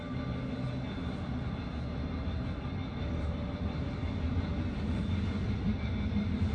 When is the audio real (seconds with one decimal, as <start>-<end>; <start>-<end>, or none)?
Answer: 0.0-1.0; 1.6-2.9; 5.9-6.5